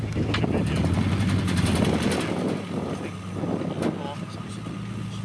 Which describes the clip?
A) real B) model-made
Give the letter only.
A